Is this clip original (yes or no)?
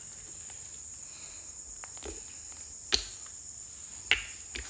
yes